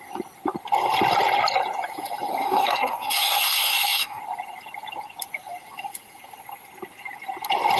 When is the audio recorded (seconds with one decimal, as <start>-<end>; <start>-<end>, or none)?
0.0-2.3; 4.2-7.8